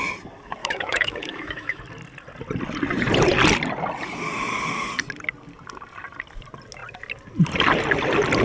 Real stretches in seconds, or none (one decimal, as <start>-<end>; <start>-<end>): 0.0-0.6; 1.8-8.4

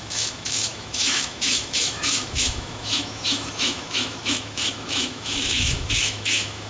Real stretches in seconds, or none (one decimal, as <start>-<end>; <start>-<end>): none

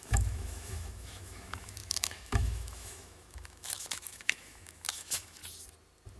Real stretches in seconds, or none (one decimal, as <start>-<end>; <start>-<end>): 5.4-6.2

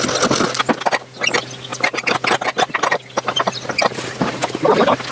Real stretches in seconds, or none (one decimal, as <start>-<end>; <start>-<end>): 0.0-5.1

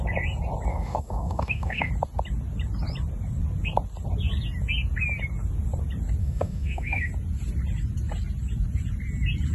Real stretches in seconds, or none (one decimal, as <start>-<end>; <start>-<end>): 0.0-0.7; 1.9-6.2; 7.1-9.5

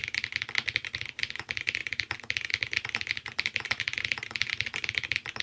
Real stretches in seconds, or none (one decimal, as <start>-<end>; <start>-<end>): 0.0-5.4